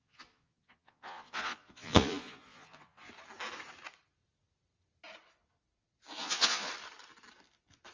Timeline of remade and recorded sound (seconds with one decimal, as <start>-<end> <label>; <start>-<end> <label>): 0.0-3.1 remade; 3.1-6.1 recorded; 6.1-6.7 remade; 6.7-7.9 recorded